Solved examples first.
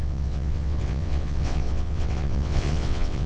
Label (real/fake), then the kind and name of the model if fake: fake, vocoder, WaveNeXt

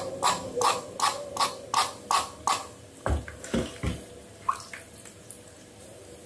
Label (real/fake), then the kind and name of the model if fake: real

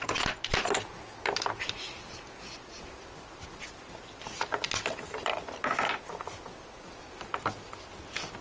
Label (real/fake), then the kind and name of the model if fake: real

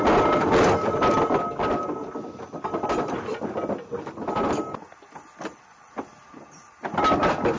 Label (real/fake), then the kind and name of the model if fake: real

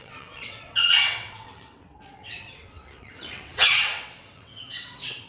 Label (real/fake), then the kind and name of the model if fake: fake, vocoder, WaveNeXt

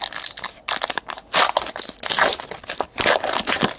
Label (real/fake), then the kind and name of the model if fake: real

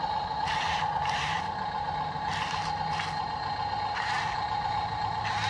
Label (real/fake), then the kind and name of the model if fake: real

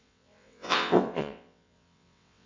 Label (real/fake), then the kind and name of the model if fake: fake, vocoder, WaveNeXt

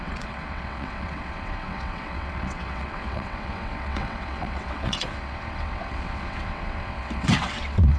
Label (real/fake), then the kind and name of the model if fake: fake, vocoder, WaveNeXt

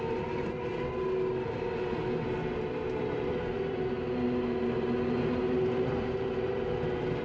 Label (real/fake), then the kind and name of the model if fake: real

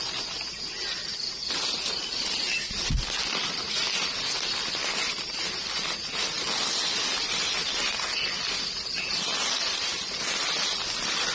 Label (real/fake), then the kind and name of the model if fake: real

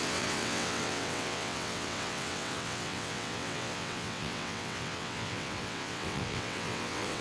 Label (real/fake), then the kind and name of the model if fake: fake, vocoder, WaveNeXt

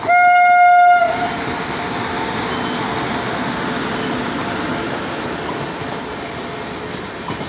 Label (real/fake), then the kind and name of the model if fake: real